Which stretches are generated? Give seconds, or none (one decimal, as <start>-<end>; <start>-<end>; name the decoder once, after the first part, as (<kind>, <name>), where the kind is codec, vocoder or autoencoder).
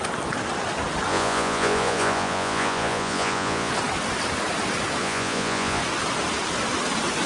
1.1-3.7 (vocoder, Vocos); 5.0-5.8